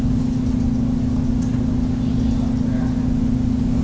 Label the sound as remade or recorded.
recorded